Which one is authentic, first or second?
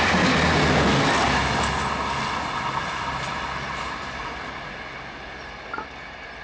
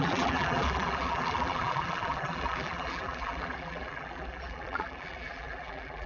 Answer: first